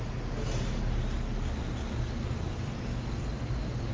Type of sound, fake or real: real